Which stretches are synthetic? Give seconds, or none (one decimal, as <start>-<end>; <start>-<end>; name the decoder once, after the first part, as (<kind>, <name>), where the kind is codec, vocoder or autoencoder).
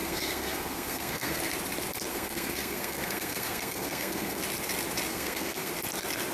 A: 0.0-1.4 (codec, SNAC); 2.1-4.4; 5.1-5.7